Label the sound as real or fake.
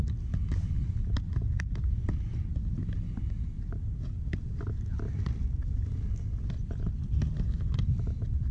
real